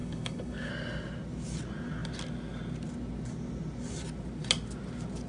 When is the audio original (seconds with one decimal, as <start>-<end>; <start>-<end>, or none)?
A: 0.7-5.3